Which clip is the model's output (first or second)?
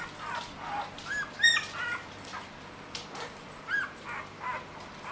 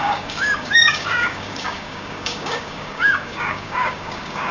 second